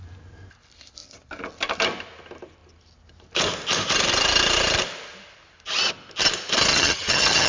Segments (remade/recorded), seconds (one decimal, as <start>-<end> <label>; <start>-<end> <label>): 0.0-6.7 recorded; 6.7-7.5 remade